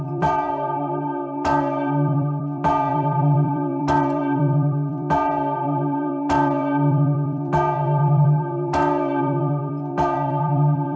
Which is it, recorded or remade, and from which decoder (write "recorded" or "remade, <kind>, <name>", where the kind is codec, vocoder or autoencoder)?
remade, vocoder, BigVGAN v2